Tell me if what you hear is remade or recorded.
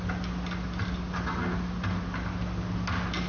recorded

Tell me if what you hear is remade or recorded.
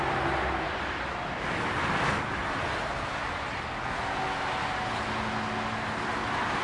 recorded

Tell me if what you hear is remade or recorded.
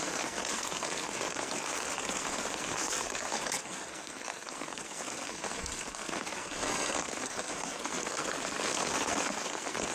remade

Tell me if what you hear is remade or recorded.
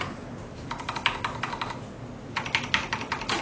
recorded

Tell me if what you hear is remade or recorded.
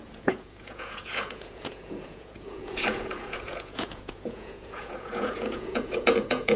remade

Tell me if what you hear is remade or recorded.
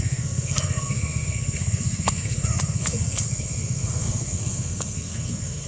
remade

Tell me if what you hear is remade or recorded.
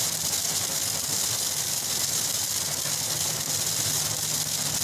recorded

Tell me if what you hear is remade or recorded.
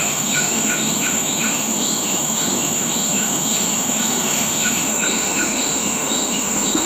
remade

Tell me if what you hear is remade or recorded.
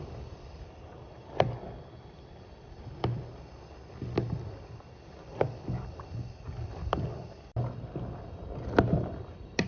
recorded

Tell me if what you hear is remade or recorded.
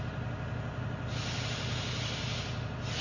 recorded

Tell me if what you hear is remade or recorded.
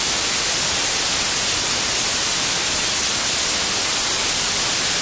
recorded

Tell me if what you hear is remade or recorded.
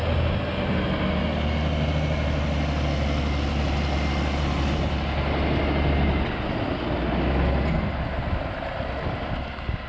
recorded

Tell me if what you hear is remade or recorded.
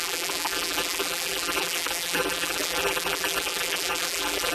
remade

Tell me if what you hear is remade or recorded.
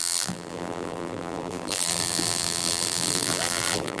remade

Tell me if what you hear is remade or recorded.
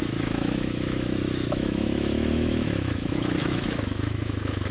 remade